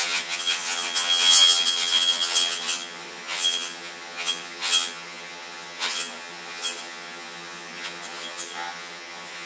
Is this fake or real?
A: fake